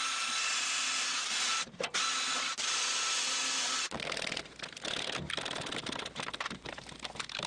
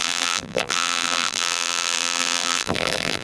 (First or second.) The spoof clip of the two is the second